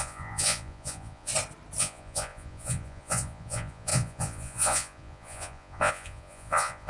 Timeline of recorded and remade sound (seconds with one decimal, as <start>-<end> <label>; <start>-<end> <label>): 0.0-1.3 remade; 1.3-1.8 recorded; 1.8-6.9 remade

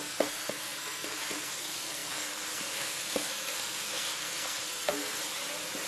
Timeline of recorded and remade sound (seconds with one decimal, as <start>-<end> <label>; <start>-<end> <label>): 0.0-5.2 remade; 5.2-5.9 recorded

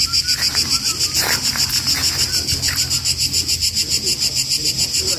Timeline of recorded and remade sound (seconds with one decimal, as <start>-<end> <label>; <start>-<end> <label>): 0.0-5.2 recorded